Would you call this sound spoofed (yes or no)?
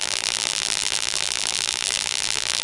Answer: yes